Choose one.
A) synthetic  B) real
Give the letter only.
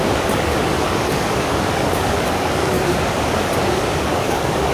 A